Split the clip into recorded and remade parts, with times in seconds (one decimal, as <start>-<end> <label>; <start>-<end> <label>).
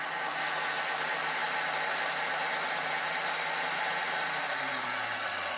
0.0-5.6 recorded